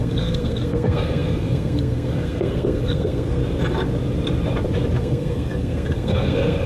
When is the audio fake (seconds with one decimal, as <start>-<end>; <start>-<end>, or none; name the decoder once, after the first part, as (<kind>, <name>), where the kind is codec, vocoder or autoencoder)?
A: 0.0-3.4 (codec, SNAC); 5.0-6.7